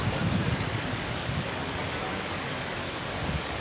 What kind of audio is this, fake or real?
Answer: fake